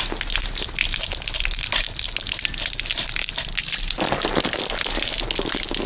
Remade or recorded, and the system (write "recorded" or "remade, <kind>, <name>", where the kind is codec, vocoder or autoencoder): recorded